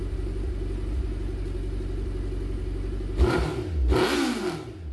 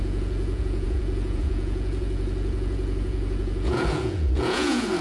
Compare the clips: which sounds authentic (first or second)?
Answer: first